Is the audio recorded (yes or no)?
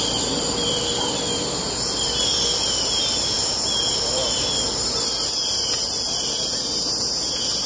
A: no